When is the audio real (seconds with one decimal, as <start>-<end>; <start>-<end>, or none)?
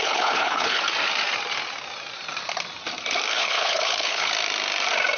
0.8-3.3; 4.3-5.2